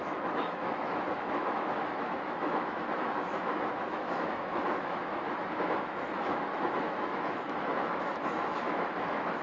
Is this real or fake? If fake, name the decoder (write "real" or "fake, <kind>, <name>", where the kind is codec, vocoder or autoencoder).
fake, autoencoder, DAC-VAE